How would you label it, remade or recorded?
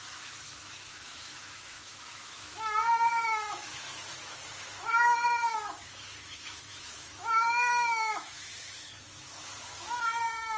remade